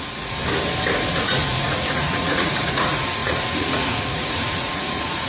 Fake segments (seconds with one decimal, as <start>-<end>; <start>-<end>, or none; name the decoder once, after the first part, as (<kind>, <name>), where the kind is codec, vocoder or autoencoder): 0.0-0.4 (vocoder, Vocos); 1.1-5.3